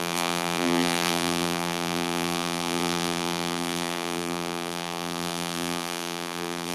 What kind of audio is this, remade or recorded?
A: remade